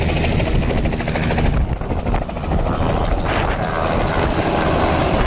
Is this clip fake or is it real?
real